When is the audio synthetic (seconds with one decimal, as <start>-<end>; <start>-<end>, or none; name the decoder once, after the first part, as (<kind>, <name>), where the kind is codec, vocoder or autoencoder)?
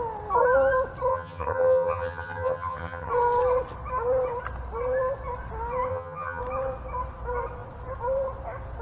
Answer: 1.1-3.1 (vocoder, HiFi-GAN); 5.9-6.4